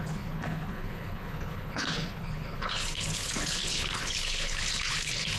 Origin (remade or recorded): remade